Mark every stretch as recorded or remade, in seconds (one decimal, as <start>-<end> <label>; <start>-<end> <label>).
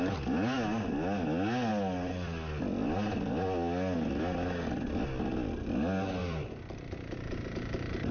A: 0.0-1.7 recorded; 1.7-3.3 remade; 3.3-6.2 recorded; 6.2-8.1 remade